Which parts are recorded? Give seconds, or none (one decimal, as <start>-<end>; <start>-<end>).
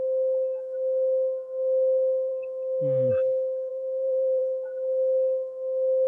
0.0-3.7; 4.4-6.1